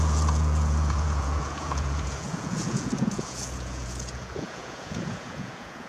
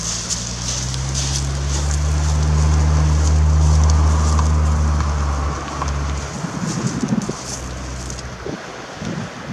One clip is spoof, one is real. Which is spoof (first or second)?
first